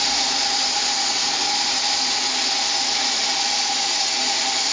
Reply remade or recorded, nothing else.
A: recorded